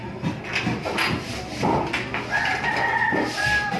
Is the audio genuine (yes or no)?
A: yes